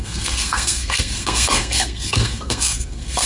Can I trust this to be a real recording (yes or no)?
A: no